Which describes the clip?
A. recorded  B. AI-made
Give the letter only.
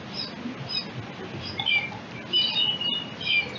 A